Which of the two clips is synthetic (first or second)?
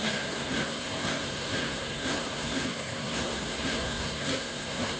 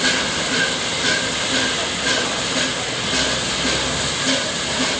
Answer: first